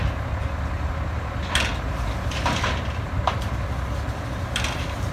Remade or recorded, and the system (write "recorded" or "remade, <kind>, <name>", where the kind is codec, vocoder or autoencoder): recorded